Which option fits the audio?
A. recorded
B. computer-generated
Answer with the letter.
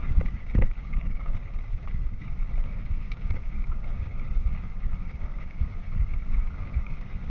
B